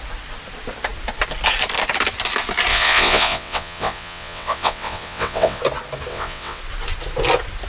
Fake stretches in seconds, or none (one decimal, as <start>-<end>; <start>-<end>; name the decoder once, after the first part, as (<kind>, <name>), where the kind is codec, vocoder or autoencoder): 2.7-5.6 (vocoder, WaveNeXt); 6.1-6.6